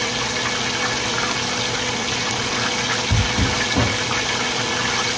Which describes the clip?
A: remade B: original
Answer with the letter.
B